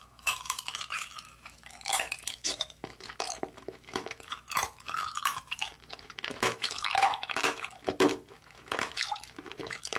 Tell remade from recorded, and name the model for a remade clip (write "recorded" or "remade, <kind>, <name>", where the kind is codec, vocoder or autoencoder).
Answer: remade, autoencoder, DAC-VAE